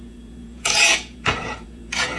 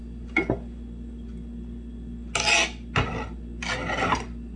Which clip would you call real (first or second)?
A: second